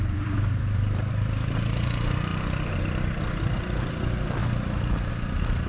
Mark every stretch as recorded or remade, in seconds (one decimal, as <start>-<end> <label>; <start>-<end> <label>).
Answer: 0.0-4.4 remade; 4.4-5.1 recorded; 5.1-5.7 remade